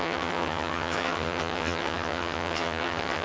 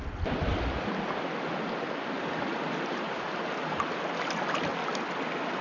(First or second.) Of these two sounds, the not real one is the first